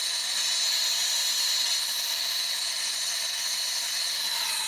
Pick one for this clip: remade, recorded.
recorded